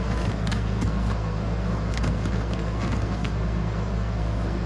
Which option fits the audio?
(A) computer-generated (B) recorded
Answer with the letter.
A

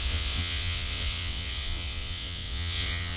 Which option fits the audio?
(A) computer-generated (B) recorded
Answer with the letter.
A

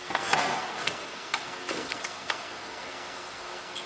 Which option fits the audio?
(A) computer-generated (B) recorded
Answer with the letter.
A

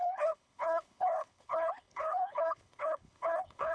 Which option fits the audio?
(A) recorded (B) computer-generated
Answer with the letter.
B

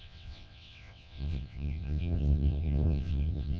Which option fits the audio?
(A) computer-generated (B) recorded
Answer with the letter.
A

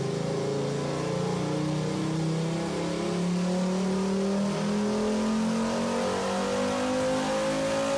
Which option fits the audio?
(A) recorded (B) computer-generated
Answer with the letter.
A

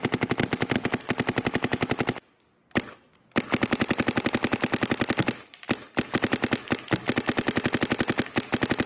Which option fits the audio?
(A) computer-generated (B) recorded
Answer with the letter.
B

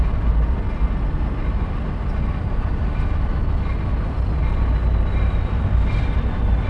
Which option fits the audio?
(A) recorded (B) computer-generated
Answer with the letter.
A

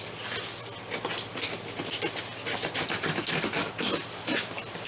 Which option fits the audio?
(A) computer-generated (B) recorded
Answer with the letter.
B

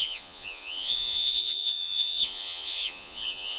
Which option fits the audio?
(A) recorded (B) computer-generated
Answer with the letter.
B